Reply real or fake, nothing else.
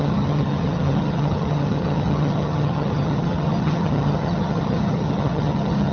fake